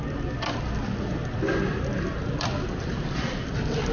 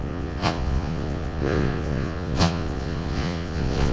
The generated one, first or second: second